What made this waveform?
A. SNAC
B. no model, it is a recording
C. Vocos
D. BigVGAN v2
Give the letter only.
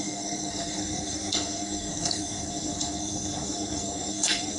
A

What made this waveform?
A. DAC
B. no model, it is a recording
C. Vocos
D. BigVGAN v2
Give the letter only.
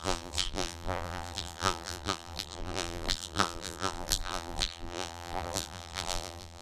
D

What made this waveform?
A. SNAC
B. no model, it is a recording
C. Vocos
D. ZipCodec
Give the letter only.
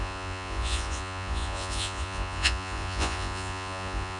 C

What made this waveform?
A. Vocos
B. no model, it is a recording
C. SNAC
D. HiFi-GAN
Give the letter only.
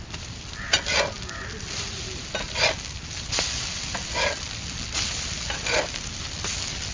B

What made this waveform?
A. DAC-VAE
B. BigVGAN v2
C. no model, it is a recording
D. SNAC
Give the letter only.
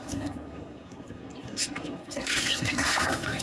D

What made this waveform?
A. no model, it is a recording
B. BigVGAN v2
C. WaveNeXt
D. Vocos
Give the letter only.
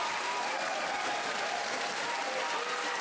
A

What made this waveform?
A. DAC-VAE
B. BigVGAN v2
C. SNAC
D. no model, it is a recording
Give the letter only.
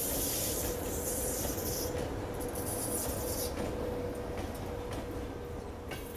D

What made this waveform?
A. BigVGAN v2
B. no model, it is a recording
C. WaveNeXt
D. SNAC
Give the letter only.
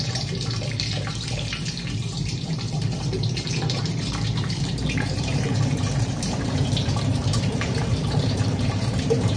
A